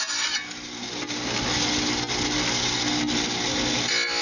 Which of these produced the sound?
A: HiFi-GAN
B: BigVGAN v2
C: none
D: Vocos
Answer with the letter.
C